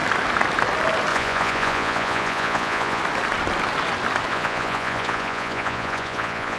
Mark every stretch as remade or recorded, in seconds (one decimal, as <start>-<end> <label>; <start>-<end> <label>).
0.0-1.1 recorded; 1.1-3.0 remade; 3.0-4.3 recorded; 4.3-6.6 remade